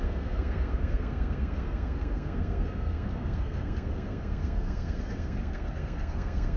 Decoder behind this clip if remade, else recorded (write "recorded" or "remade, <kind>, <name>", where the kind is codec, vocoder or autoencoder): remade, codec, SNAC